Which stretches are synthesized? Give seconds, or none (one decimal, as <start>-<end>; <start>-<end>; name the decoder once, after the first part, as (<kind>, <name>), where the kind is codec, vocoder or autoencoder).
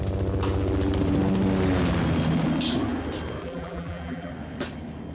3.4-4.3 (vocoder, BigVGAN v2)